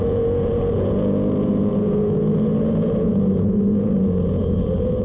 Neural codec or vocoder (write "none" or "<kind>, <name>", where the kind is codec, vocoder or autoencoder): vocoder, Vocos